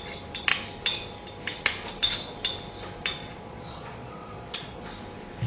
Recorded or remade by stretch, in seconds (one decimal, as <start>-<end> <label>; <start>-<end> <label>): 0.0-3.2 recorded; 3.2-4.9 remade; 4.9-5.5 recorded